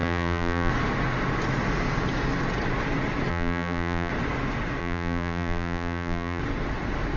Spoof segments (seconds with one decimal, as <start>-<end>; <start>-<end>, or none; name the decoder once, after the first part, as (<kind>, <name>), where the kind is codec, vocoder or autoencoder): 0.0-0.7 (vocoder, BigVGAN v2); 3.3-4.1; 4.8-6.4